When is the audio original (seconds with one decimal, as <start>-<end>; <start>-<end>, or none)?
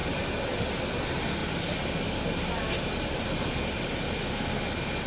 0.8-2.9; 3.7-5.1